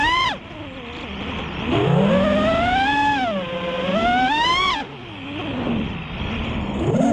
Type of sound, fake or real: real